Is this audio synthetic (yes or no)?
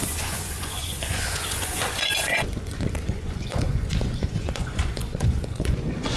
yes